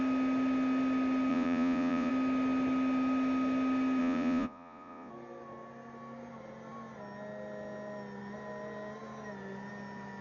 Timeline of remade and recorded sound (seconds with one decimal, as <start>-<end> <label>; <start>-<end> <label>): 0.0-1.3 recorded; 1.3-2.1 remade; 2.1-4.0 recorded; 4.0-5.1 remade; 5.1-10.2 recorded